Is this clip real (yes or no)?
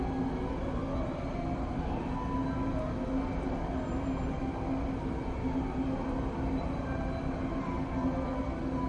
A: yes